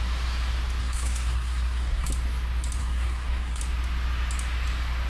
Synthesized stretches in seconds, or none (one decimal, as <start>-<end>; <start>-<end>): 0.8-2.1; 2.8-3.6